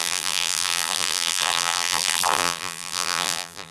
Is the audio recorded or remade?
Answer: remade